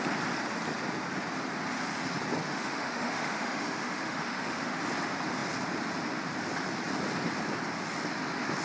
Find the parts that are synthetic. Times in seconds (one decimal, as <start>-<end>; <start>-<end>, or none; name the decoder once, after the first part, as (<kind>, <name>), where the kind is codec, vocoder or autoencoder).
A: 2.4-4.8 (autoencoder, DAC-VAE)